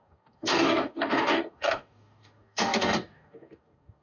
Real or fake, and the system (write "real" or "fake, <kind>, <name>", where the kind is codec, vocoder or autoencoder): fake, codec, DAC